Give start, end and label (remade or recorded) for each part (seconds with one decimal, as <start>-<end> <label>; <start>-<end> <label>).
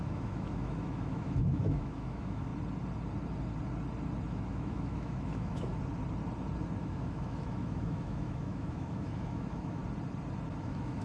0.0-2.5 remade; 2.5-4.3 recorded; 4.3-5.7 remade; 5.7-6.8 recorded; 6.8-9.8 remade; 9.8-10.5 recorded; 10.5-11.0 remade